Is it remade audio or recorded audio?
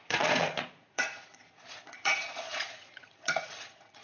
remade